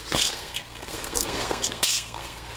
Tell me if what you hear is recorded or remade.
remade